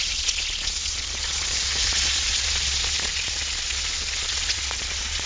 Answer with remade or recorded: remade